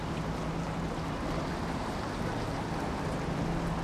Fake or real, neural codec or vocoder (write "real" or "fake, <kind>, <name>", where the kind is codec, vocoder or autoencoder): real